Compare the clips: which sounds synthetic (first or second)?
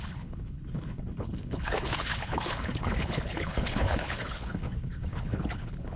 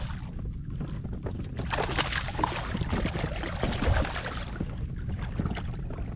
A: first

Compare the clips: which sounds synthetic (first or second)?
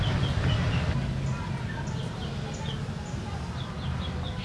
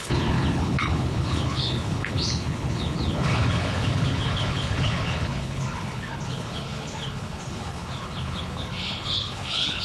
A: second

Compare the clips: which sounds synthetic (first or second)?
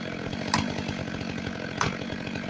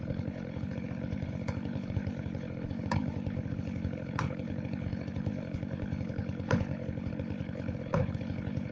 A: second